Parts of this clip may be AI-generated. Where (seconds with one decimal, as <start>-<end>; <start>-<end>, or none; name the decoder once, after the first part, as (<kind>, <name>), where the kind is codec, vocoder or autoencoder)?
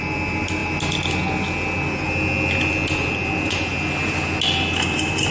none